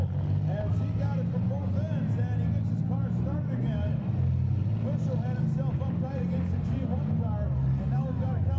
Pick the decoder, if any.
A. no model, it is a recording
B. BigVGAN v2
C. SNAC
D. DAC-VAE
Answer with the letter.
A